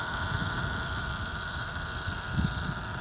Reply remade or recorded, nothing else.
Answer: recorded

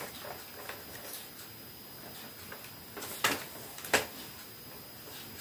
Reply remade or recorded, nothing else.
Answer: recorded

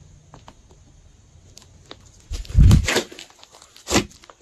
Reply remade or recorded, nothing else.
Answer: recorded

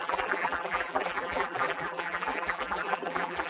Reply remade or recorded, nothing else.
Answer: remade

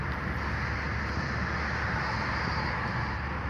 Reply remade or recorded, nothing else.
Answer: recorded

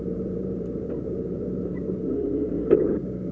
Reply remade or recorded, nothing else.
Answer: remade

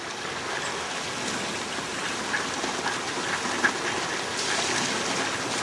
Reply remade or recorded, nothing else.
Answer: recorded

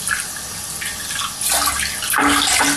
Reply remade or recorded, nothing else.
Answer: recorded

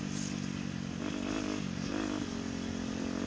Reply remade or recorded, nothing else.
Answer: recorded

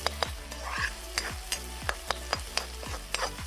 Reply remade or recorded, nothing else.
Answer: recorded